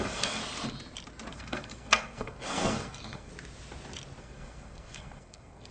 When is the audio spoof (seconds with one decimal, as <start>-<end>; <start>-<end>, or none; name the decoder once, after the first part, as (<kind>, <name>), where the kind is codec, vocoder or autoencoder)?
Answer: 0.0-0.4 (codec, SNAC); 1.3-3.3; 4.2-5.7